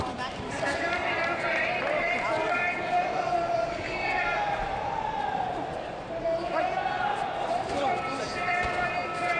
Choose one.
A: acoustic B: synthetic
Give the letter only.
A